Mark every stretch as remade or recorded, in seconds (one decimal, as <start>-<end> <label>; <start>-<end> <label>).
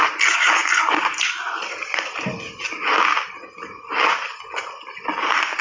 0.0-5.6 recorded